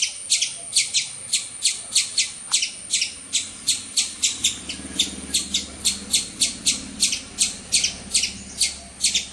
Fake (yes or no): no